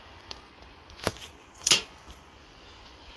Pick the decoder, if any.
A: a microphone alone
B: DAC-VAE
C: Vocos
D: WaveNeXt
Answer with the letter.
C